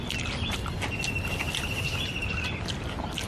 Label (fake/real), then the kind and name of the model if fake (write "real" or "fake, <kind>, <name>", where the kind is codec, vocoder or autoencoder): real